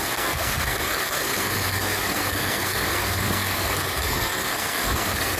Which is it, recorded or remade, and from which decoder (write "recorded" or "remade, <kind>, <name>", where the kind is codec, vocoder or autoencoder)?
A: remade, codec, SNAC